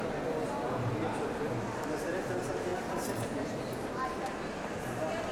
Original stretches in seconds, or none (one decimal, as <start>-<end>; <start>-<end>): 0.0-2.7; 3.6-5.3